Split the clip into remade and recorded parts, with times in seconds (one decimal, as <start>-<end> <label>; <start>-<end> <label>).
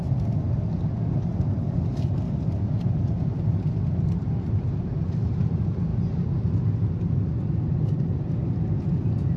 0.0-9.4 recorded